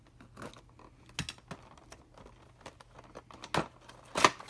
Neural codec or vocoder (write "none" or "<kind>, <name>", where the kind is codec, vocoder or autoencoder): none